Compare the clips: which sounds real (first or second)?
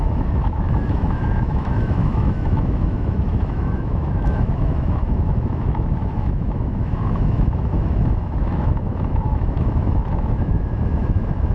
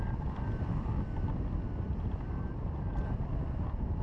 second